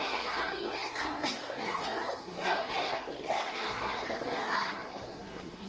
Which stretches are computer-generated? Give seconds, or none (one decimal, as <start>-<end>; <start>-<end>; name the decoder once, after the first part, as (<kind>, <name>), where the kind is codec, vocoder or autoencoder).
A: 0.0-5.7 (codec, SNAC)